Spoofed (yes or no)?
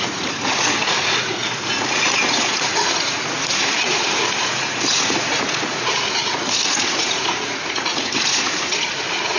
yes